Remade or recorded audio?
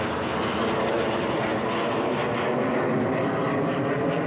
recorded